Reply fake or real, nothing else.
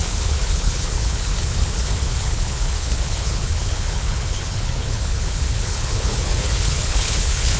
fake